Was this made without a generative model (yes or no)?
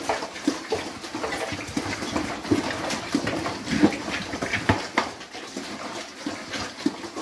yes